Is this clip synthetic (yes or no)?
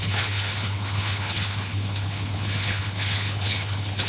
yes